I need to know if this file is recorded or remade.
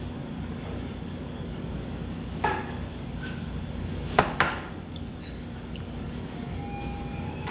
remade